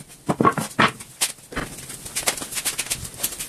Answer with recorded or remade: recorded